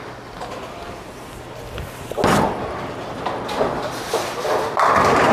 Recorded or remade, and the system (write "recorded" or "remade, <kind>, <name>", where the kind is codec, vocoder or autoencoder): recorded